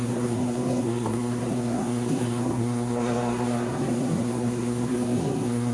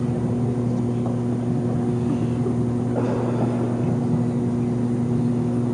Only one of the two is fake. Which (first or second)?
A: first